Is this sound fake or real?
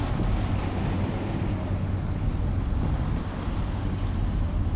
real